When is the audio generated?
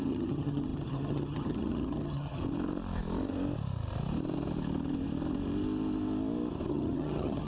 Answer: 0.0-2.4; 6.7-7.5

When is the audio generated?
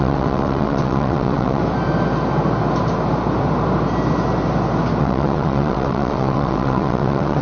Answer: 0.0-1.6; 5.0-7.4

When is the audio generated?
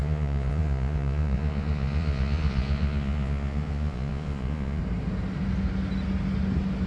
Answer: 0.0-4.8